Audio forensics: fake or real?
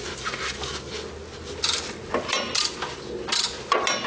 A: real